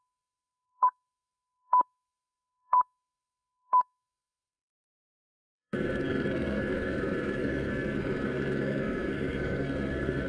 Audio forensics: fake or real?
fake